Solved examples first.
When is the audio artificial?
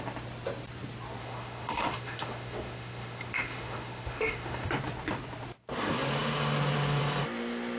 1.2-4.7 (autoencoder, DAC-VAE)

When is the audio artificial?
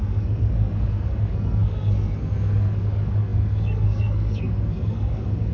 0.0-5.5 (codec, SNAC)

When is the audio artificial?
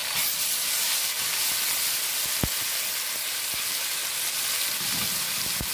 none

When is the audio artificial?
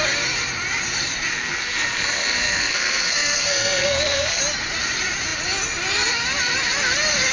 1.3-4.4 (codec, SNAC)